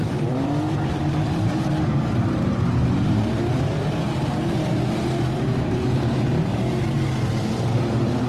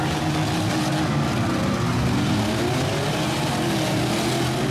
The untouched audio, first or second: second